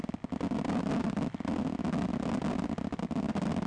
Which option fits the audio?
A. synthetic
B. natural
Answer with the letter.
B